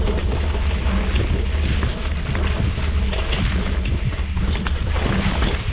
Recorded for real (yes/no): yes